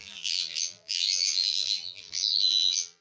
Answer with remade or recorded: remade